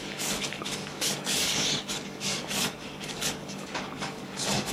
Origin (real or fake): fake